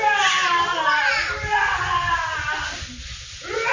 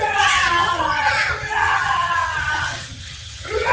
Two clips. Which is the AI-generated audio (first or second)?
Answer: second